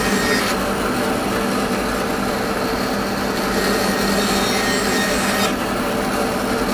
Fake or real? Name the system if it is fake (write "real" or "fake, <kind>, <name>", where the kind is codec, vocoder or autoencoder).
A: real